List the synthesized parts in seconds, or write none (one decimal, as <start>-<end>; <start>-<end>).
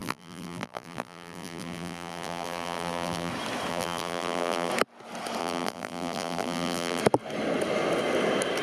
0.0-3.3; 3.7-4.7; 5.4-7.0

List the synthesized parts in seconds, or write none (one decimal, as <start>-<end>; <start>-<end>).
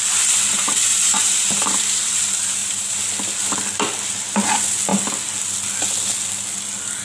0.9-2.1; 2.6-3.1